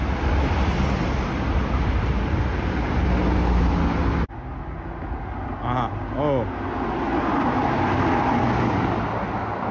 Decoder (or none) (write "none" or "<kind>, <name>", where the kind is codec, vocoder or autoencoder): none